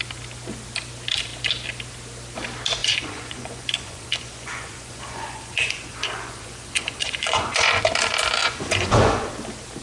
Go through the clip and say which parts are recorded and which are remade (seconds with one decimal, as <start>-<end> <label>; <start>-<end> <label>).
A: 0.0-2.8 recorded; 2.8-7.8 remade; 7.8-8.4 recorded; 8.4-9.3 remade; 9.3-9.8 recorded